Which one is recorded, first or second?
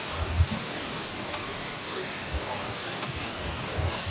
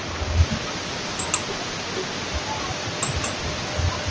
second